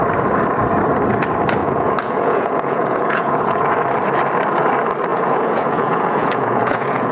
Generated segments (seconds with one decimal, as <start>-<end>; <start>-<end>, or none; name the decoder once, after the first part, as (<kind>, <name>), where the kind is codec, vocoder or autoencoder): 1.6-3.7 (vocoder, Vocos); 5.1-7.1